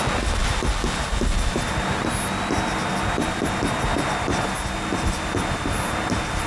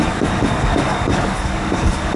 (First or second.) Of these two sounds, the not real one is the second